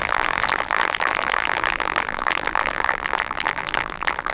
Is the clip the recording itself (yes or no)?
no